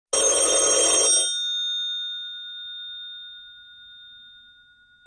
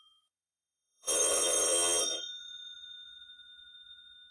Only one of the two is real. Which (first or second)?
first